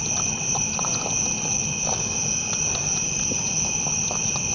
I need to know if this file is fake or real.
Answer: real